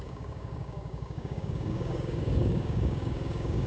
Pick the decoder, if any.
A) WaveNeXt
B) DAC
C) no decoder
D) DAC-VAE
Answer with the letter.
B